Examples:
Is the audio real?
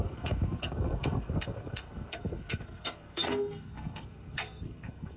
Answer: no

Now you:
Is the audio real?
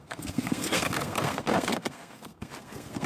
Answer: no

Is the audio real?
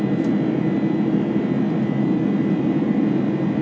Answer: yes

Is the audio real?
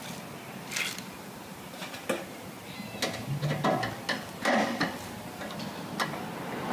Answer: yes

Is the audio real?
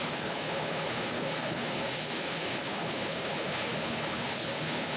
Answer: no